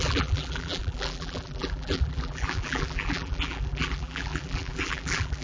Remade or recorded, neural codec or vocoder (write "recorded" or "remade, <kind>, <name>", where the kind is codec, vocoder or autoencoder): remade, vocoder, BigVGAN v2